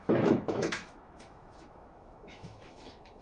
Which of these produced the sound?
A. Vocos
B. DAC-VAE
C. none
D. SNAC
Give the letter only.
B